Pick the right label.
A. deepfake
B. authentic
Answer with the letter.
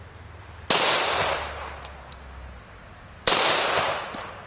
B